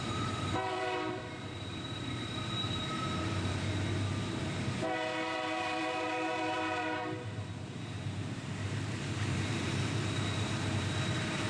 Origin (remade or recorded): remade